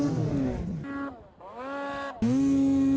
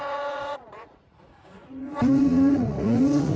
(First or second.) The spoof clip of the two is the second